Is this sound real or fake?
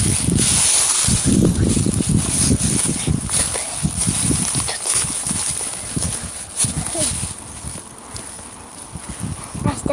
real